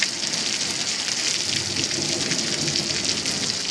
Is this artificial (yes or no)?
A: no